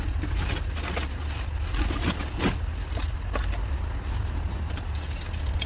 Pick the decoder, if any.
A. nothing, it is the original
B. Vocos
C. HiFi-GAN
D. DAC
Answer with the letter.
A